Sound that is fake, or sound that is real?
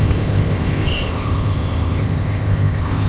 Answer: fake